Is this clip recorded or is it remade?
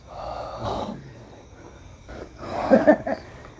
remade